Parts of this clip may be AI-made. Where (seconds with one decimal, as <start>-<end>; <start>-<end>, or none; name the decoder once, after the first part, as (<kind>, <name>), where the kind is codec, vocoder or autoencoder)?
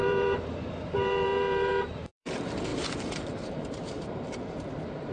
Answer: 0.0-5.1 (vocoder, BigVGAN v2)